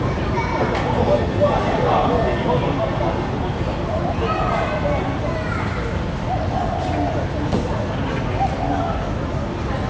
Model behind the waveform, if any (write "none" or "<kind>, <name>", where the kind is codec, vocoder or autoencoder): none